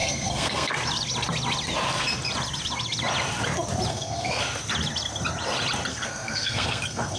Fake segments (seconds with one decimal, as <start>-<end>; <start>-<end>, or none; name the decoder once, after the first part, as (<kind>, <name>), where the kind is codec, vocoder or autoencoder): 0.0-0.7 (codec, SNAC); 3.9-4.4; 5.9-7.2